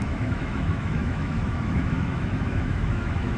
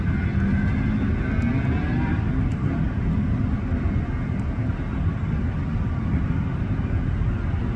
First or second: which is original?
second